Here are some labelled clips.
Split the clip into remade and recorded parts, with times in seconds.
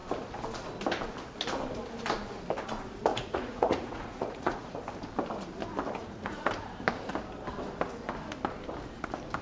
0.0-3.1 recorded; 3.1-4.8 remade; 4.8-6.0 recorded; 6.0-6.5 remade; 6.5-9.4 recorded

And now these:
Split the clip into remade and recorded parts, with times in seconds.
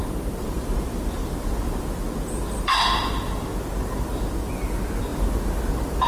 0.0-1.8 remade; 1.8-6.1 recorded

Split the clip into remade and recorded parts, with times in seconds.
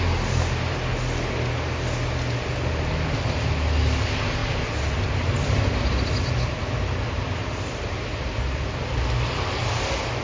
0.0-4.4 recorded; 4.4-6.6 remade; 6.6-7.4 recorded; 7.4-9.0 remade; 9.0-10.2 recorded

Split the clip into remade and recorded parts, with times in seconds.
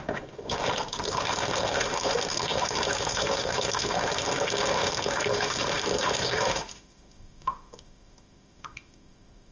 0.0-9.5 remade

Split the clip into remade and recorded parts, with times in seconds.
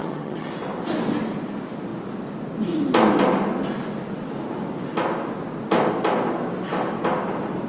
0.0-0.5 remade; 0.5-7.7 recorded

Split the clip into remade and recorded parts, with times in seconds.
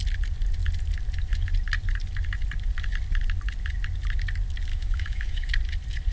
0.0-4.7 recorded; 4.7-5.5 remade; 5.5-6.1 recorded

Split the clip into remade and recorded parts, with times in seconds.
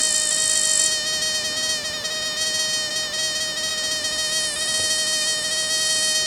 0.0-6.3 recorded